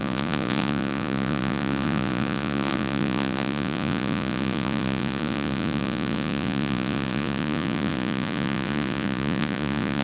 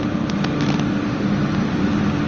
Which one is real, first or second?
second